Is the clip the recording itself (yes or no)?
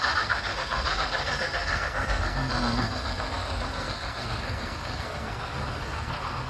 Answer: no